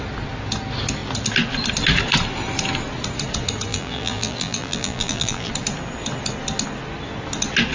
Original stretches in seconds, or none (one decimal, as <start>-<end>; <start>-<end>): 0.0-3.7; 5.5-7.7